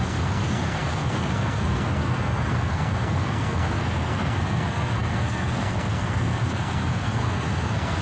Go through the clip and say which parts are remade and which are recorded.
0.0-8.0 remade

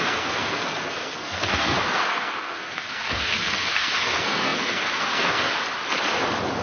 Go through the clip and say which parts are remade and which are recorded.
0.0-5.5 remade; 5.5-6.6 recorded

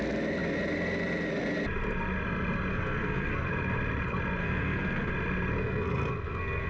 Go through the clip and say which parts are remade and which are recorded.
0.0-2.7 recorded; 2.7-3.5 remade; 3.5-4.4 recorded; 4.4-5.1 remade; 5.1-5.6 recorded; 5.6-6.7 remade